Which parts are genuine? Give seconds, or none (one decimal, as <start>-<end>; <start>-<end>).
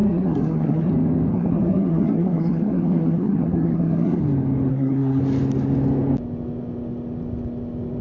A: 0.9-1.3; 4.2-4.7; 5.2-8.0